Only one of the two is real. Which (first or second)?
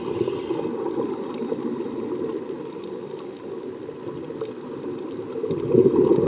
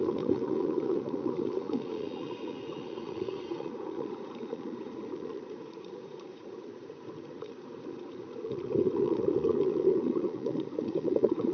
first